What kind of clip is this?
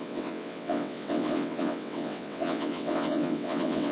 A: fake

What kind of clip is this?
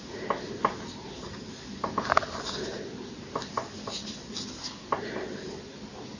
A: real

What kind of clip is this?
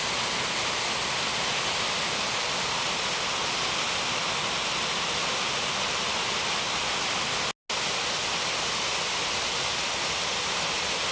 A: real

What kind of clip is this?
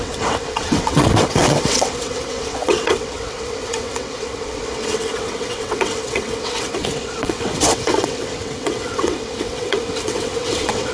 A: fake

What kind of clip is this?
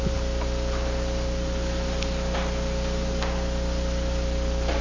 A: real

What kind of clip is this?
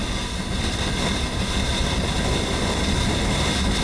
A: real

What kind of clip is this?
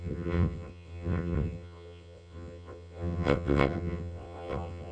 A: fake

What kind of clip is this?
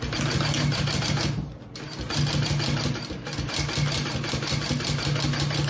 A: real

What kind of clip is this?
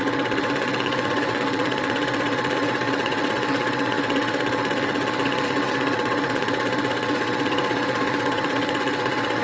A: fake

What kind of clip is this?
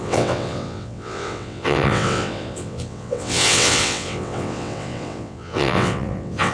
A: fake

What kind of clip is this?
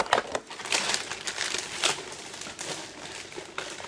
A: real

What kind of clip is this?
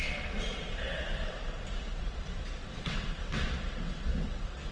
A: fake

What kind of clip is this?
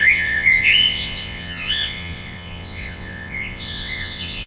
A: fake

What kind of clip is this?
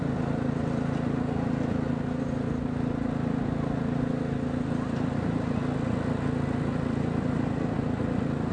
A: real